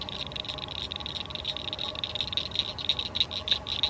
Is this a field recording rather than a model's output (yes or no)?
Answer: yes